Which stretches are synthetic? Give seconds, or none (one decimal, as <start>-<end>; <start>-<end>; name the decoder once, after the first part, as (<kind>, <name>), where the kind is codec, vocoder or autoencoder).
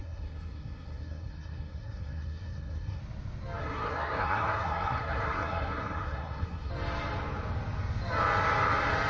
0.0-3.0 (codec, SNAC); 3.6-6.7